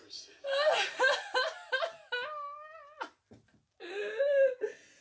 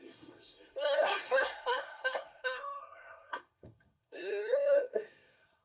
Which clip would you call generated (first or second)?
second